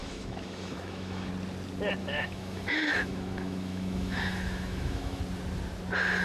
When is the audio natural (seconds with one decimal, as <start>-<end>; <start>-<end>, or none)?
1.3-2.0; 5.2-6.2